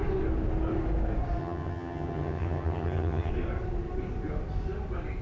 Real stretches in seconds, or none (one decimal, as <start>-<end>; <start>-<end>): 0.0-1.4; 3.3-5.2